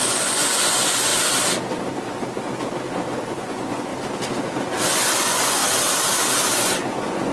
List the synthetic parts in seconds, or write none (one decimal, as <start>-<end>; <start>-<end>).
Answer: 0.0-1.1; 3.2-3.9; 4.9-5.6; 6.4-7.3